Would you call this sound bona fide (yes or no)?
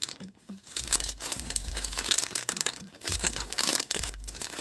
no